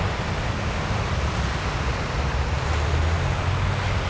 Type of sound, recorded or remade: recorded